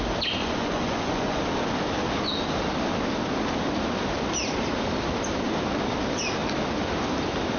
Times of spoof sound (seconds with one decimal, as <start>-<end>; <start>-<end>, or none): 0.4-1.4